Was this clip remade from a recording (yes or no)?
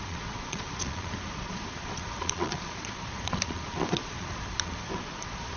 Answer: yes